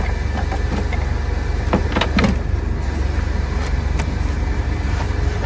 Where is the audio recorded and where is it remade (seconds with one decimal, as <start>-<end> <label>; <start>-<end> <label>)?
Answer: 0.0-5.5 recorded